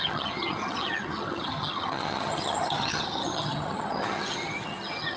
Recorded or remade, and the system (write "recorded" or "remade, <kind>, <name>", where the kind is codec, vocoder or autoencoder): remade, vocoder, HiFi-GAN